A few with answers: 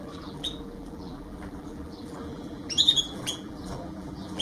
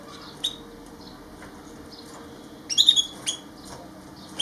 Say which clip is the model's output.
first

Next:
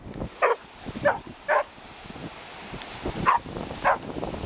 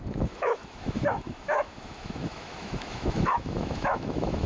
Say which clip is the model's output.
second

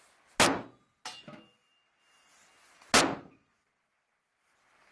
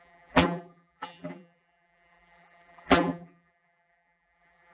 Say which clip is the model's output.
second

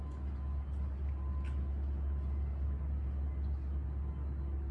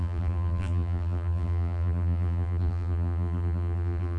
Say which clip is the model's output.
second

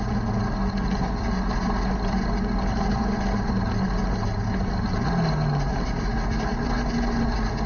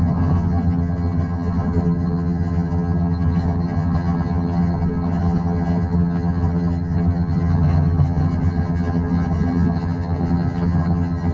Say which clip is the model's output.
second